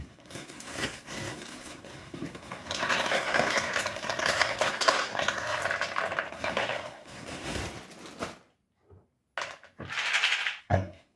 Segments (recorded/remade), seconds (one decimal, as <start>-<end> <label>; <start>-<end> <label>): 0.0-5.6 remade; 5.6-6.3 recorded; 6.3-7.6 remade; 7.6-10.6 recorded; 10.6-11.2 remade